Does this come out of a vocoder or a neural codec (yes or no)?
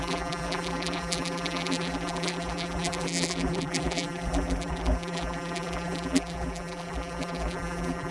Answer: yes